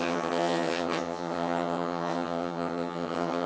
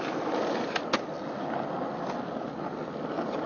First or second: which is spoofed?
first